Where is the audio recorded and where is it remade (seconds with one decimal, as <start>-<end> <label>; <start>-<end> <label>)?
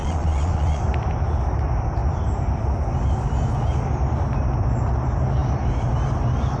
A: 0.0-0.8 remade; 0.8-6.6 recorded